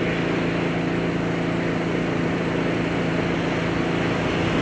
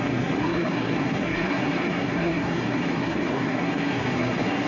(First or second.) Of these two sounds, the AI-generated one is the second